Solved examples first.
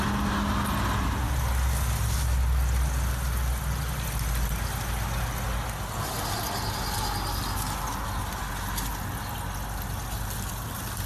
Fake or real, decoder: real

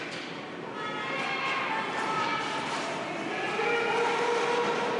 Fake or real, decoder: real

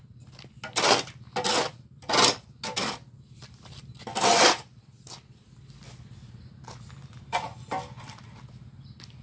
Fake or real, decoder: real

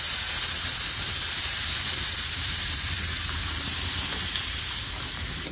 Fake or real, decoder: real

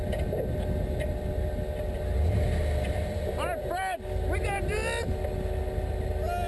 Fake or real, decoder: real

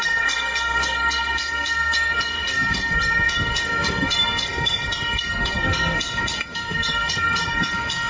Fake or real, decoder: fake, codec, SNAC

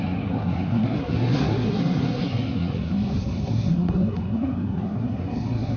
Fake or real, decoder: fake, codec, SNAC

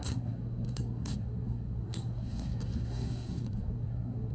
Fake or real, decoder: fake, codec, SNAC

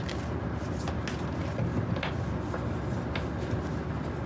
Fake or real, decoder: real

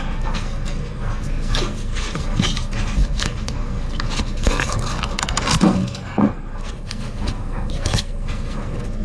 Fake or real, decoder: fake, codec, SNAC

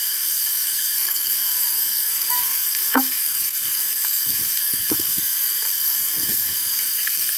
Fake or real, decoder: fake, codec, SNAC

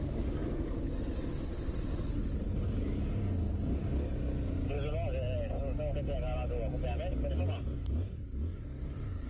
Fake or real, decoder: real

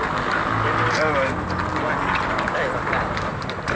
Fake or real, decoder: real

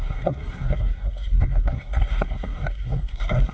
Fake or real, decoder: fake, codec, SNAC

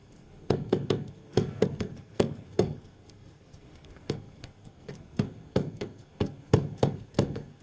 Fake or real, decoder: fake, codec, SNAC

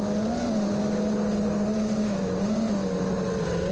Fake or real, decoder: real